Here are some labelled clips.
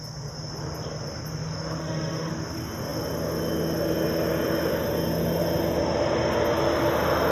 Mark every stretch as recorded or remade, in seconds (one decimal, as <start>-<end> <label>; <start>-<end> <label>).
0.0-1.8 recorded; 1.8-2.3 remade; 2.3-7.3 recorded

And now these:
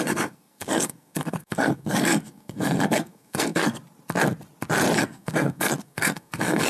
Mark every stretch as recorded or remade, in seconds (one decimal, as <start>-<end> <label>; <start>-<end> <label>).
0.0-3.8 remade; 3.8-5.0 recorded; 5.0-6.7 remade

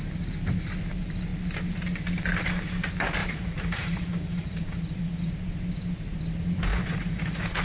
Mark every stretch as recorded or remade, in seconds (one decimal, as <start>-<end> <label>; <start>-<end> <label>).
0.0-3.2 recorded; 3.2-5.3 remade; 5.3-6.7 recorded; 6.7-7.6 remade

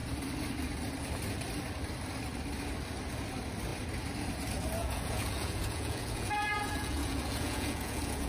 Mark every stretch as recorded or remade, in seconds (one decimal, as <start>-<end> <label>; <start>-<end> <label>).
0.0-4.8 recorded; 4.8-8.3 remade

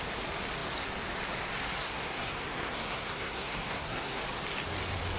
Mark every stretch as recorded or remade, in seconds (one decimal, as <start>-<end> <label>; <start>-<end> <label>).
0.0-1.8 recorded; 1.8-4.2 remade; 4.2-5.2 recorded

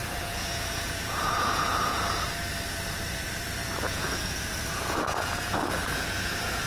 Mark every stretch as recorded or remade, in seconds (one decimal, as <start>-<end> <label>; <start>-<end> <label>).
0.0-2.3 remade; 2.3-3.6 recorded; 3.6-6.7 remade